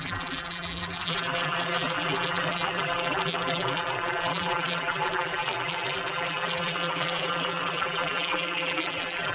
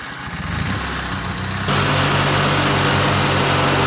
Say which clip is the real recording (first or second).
second